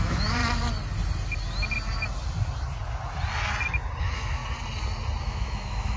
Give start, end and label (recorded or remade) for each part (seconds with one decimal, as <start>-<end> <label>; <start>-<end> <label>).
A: 0.0-0.4 remade; 0.4-4.0 recorded; 4.0-4.4 remade; 4.4-5.2 recorded; 5.2-6.0 remade